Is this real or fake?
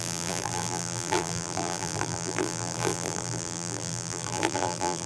fake